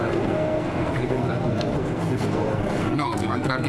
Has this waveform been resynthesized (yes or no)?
yes